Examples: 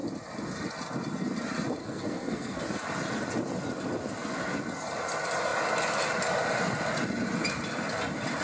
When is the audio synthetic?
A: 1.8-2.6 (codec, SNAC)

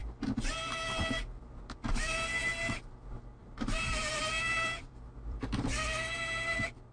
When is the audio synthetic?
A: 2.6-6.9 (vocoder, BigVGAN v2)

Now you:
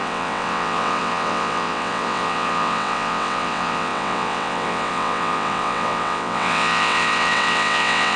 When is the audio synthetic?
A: 0.0-8.2 (vocoder, WaveNeXt)